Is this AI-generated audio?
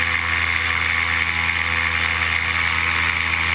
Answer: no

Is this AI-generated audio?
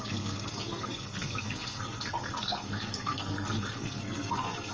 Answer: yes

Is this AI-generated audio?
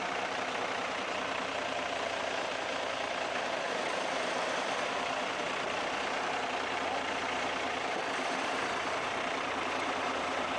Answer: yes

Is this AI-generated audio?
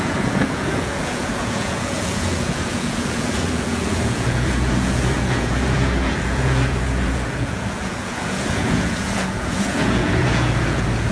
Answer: yes